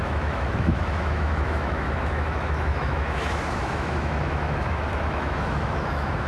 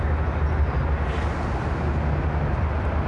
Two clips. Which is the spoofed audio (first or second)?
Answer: first